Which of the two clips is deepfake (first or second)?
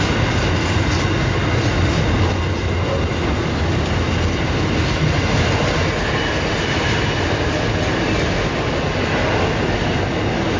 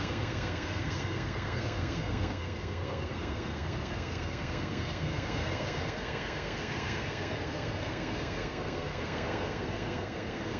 second